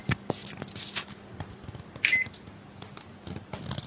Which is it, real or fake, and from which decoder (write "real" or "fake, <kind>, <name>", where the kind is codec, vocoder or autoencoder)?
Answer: real